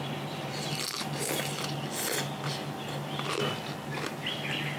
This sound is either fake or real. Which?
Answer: real